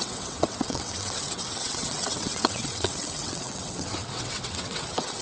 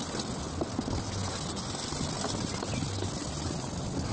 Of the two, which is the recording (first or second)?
second